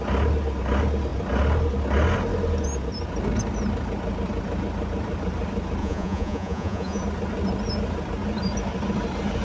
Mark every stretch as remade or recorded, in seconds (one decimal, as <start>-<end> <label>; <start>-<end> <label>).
0.0-5.8 recorded; 5.8-7.0 remade; 7.0-9.4 recorded